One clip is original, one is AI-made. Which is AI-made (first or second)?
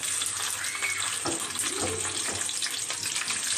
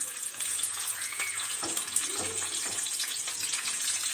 second